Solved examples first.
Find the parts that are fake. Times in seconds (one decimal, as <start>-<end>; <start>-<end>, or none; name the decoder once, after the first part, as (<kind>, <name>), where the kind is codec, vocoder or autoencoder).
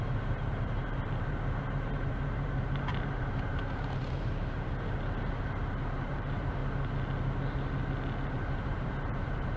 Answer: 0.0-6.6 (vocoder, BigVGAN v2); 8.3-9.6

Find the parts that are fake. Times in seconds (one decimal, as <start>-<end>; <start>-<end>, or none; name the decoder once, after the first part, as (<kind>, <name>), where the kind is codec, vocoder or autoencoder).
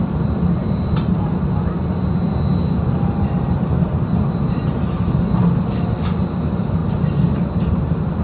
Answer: none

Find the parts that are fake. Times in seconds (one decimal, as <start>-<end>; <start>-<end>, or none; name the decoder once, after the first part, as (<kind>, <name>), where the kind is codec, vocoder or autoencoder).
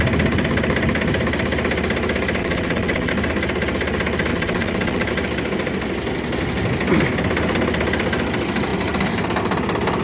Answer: 2.4-3.1 (vocoder, WaveNeXt); 4.3-5.1